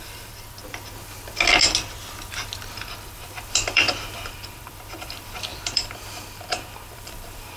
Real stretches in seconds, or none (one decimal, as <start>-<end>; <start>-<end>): 0.6-3.1